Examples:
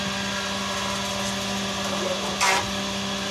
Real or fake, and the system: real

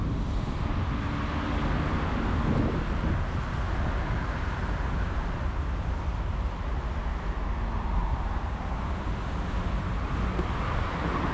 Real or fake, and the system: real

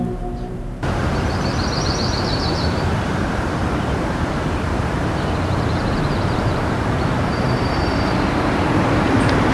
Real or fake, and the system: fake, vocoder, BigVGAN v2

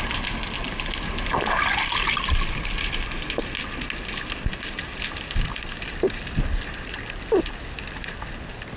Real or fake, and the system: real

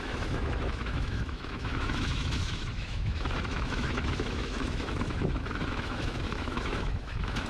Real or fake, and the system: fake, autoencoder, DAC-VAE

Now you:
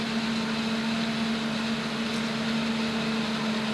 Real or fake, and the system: real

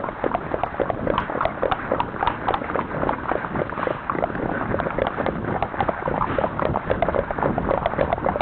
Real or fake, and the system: real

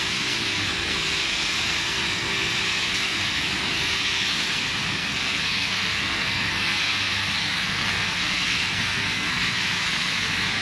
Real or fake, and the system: fake, codec, SNAC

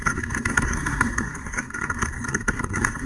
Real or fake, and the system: fake, codec, SNAC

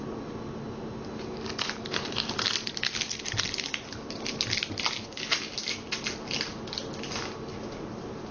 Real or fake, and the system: real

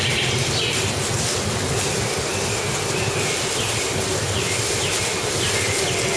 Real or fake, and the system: real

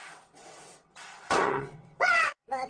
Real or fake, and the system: fake, vocoder, WaveNeXt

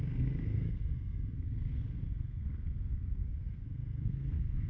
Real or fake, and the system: fake, codec, SNAC